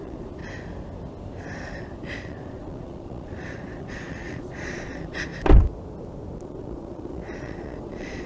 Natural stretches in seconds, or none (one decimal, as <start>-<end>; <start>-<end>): 0.4-1.8; 5.3-6.4